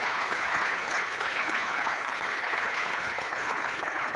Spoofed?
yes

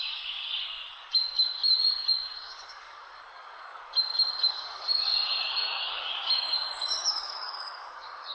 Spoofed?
yes